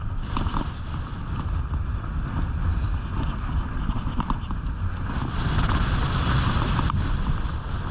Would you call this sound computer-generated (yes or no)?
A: no